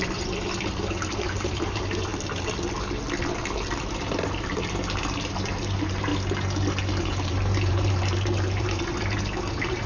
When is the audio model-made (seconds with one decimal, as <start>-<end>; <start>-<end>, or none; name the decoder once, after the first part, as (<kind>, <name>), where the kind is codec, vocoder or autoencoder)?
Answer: 0.0-2.1 (vocoder, BigVGAN v2); 3.9-6.1; 7.0-9.9